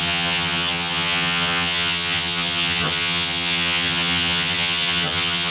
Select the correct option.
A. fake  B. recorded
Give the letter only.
A